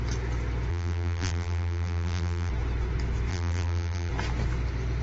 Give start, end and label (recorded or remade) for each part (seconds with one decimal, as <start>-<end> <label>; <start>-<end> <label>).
0.0-0.7 recorded; 0.7-2.5 remade; 2.5-3.3 recorded; 3.3-4.1 remade; 4.1-5.0 recorded